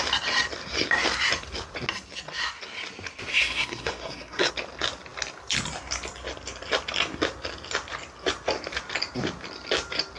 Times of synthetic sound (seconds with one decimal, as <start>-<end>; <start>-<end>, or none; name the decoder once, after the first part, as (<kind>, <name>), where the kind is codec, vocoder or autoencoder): 3.3-4.5 (codec, SNAC)